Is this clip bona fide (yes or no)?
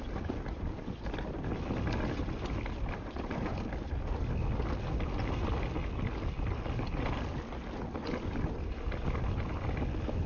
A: yes